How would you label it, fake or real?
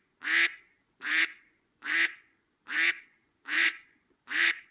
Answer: fake